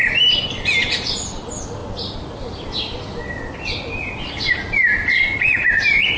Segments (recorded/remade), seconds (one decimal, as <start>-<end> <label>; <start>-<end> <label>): 0.0-6.2 recorded